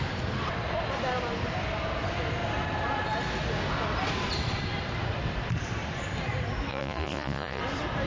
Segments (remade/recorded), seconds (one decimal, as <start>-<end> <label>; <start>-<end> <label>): 0.0-6.7 recorded; 6.7-7.6 remade; 7.6-8.1 recorded